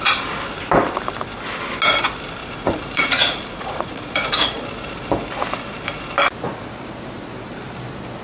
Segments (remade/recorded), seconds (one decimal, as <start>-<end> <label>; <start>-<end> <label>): 0.0-2.4 recorded; 2.4-4.6 remade; 4.6-8.2 recorded